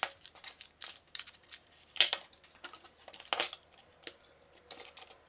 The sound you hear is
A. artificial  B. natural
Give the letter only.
B